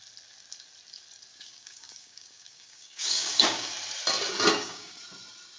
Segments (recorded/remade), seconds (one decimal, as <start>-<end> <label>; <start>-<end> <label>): 0.0-1.3 recorded; 1.3-3.7 remade; 3.7-4.5 recorded; 4.5-5.0 remade; 5.0-5.6 recorded